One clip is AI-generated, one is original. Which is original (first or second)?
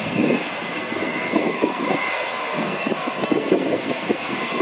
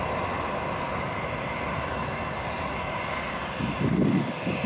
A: second